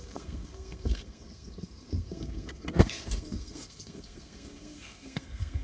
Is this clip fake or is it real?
fake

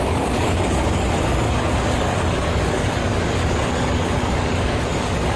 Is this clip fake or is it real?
fake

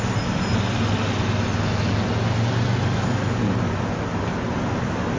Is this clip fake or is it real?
real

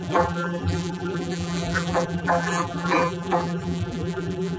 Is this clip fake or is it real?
fake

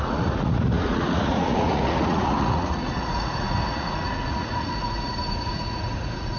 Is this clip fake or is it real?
fake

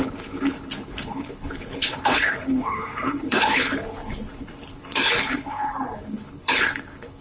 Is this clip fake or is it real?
fake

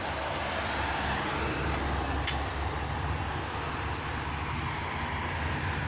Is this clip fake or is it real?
real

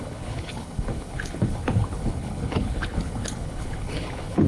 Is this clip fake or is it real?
fake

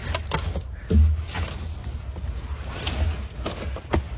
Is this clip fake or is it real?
real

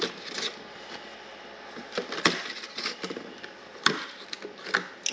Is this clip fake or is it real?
real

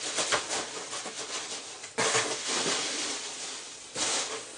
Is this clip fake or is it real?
real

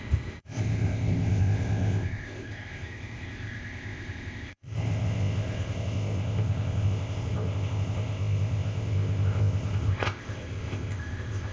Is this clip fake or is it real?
fake